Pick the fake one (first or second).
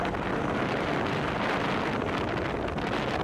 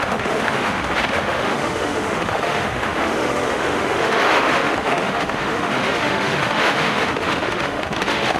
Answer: second